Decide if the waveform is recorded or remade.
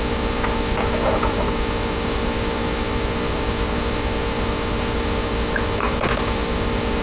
remade